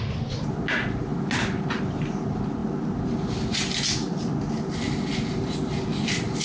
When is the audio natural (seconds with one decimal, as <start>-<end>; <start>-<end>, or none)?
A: 0.0-6.4